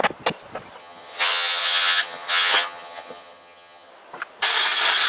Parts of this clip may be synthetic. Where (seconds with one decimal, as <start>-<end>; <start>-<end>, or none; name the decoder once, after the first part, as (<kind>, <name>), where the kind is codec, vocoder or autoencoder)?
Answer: 0.8-3.9 (vocoder, HiFi-GAN)

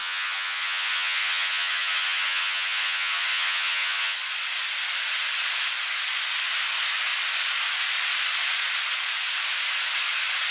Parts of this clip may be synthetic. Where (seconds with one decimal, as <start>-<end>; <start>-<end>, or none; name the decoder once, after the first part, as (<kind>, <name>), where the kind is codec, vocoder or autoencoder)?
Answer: 0.0-4.2 (vocoder, HiFi-GAN)

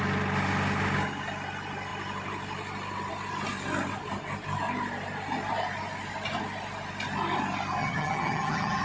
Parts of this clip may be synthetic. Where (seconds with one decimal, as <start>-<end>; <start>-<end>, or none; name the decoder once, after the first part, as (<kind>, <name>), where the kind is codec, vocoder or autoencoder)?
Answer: 7.8-8.8 (vocoder, HiFi-GAN)

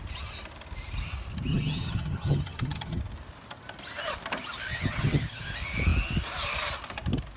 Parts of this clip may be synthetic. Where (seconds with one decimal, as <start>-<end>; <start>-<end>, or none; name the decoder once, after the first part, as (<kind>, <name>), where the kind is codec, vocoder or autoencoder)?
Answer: 1.5-3.0 (vocoder, HiFi-GAN); 4.7-5.5

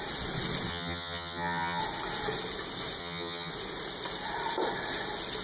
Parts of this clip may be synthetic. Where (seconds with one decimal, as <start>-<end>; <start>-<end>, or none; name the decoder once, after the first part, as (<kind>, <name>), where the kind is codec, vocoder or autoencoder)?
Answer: 0.7-1.8 (vocoder, HiFi-GAN); 3.0-3.5

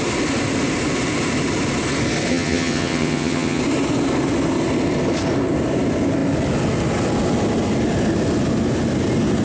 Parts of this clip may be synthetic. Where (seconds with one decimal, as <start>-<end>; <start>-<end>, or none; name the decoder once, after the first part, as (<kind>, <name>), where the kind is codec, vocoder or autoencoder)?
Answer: 2.3-3.6 (vocoder, HiFi-GAN)

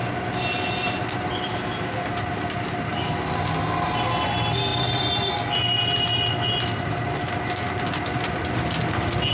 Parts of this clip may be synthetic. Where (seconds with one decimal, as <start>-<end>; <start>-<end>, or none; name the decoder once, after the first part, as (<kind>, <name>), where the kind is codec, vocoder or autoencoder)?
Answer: none